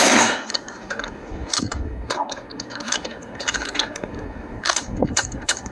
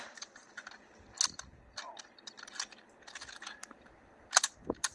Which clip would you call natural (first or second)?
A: second